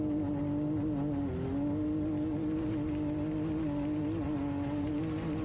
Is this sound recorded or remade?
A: recorded